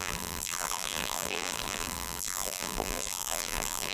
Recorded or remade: remade